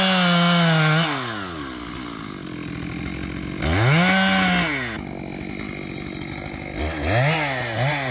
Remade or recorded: recorded